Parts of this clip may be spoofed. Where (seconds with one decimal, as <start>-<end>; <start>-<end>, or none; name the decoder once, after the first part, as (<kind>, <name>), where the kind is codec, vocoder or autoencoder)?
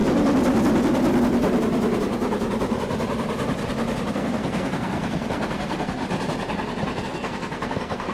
4.1-6.0 (codec, SNAC); 7.0-8.1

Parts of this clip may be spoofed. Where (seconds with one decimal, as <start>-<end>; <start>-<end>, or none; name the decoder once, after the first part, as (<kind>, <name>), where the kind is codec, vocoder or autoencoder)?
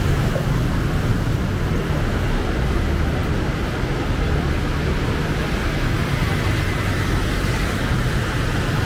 none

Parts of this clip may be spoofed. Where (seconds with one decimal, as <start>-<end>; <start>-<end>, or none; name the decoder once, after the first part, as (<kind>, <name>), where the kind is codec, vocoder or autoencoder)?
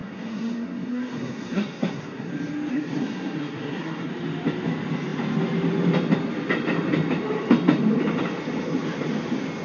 0.0-2.3 (codec, SNAC); 2.7-4.1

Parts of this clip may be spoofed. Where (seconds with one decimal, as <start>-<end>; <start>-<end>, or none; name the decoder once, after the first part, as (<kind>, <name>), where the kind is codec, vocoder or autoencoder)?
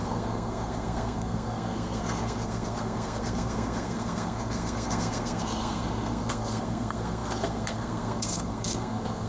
0.0-9.3 (codec, SNAC)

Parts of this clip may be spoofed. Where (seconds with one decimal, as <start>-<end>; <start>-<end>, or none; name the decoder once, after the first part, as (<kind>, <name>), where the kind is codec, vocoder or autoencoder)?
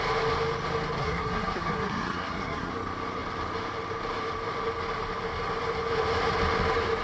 1.0-2.7 (codec, SNAC)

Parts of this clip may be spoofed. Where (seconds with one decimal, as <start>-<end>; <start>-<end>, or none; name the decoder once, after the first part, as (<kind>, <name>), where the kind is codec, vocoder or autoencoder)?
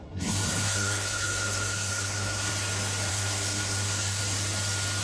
0.0-2.5 (codec, SNAC); 3.1-4.2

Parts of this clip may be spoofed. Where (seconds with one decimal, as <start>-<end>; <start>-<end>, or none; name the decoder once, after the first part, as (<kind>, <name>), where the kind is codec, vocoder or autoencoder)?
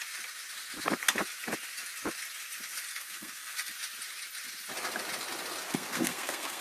2.9-3.7 (codec, SNAC); 5.7-6.6